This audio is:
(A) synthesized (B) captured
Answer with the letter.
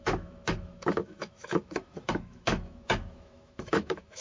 A